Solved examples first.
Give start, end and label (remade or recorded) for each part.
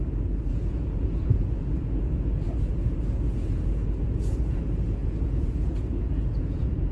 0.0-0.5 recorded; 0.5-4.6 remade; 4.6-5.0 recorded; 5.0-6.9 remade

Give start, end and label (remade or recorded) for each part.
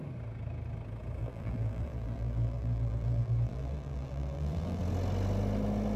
0.0-1.2 recorded; 1.2-4.8 remade; 4.8-6.0 recorded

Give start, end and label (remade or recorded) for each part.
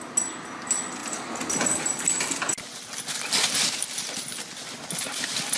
0.0-5.6 recorded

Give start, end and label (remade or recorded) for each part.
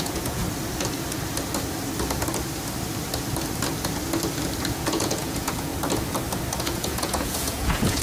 0.0-0.4 remade; 0.4-4.7 recorded; 4.7-5.7 remade; 5.7-6.6 recorded; 6.6-8.0 remade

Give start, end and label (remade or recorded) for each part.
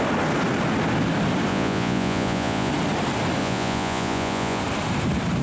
0.0-1.5 recorded; 1.5-2.7 remade; 2.7-3.4 recorded; 3.4-4.6 remade; 4.6-5.4 recorded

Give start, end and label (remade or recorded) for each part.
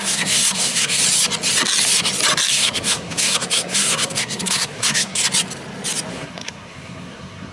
0.0-1.0 remade; 1.0-2.5 recorded; 2.5-5.2 remade; 5.2-6.1 recorded; 6.1-7.5 remade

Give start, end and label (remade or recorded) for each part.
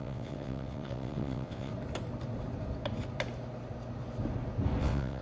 0.0-1.7 remade; 1.7-4.8 recorded; 4.8-5.2 remade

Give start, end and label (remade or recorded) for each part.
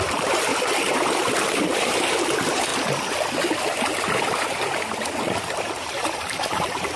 0.0-0.5 remade; 0.5-1.7 recorded; 1.7-2.7 remade; 2.7-5.5 recorded; 5.5-7.0 remade